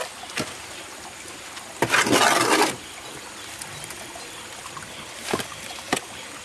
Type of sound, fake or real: real